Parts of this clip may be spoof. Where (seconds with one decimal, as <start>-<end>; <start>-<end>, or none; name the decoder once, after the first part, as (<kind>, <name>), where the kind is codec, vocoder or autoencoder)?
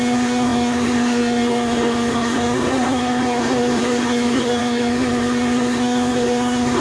0.0-6.8 (codec, SNAC)